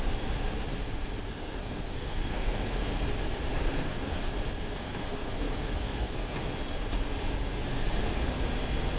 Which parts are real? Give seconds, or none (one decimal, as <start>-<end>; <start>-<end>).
0.0-1.3; 2.8-3.5; 4.3-4.8; 6.4-7.7; 8.2-9.0